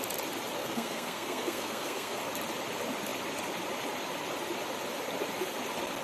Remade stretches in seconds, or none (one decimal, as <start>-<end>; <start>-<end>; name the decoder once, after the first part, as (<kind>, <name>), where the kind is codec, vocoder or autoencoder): 0.6-2.2 (codec, SNAC)